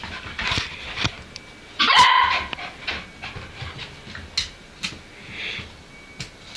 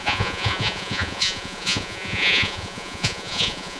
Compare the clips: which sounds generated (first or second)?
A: second